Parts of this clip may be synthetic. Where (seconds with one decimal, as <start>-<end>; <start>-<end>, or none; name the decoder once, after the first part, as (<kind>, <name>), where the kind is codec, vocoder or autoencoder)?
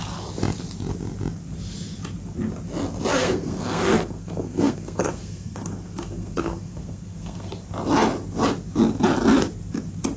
3.2-7.5 (codec, SNAC)